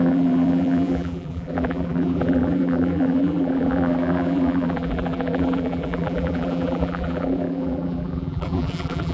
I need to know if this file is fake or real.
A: fake